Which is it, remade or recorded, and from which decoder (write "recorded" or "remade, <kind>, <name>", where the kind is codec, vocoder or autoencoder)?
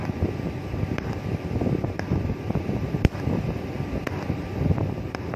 remade, vocoder, BigVGAN v2